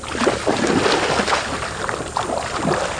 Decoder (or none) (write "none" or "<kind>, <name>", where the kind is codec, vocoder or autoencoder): none